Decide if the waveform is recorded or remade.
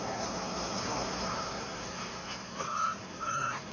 remade